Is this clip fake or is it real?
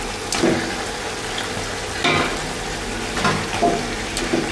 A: real